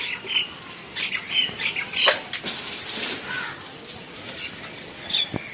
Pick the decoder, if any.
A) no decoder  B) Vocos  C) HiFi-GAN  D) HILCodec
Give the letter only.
A